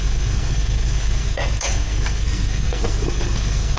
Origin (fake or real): fake